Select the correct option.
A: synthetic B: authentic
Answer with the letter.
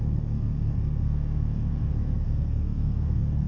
A